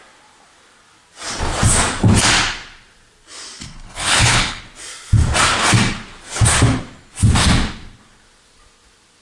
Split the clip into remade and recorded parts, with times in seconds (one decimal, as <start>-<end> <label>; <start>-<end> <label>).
0.0-3.6 recorded; 3.6-4.6 remade; 4.6-9.2 recorded